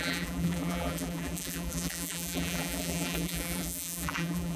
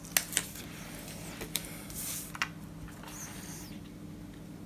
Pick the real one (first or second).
second